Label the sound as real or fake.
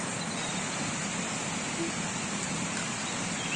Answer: real